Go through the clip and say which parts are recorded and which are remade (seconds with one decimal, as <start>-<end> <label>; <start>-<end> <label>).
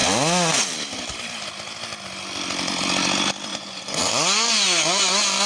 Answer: 0.0-3.5 recorded; 3.5-4.1 remade; 4.1-5.5 recorded